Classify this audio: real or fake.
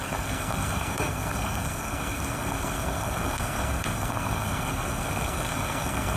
fake